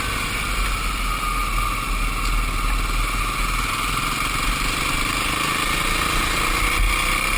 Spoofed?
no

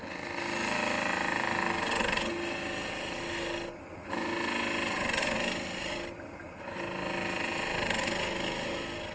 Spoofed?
no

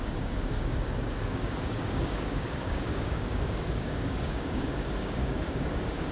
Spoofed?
yes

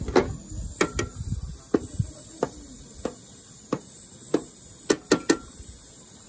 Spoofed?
no